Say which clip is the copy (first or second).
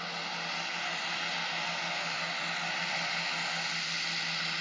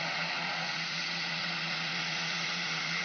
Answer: second